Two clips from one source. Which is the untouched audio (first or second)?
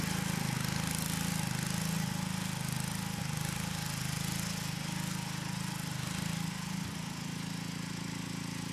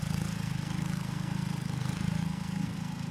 first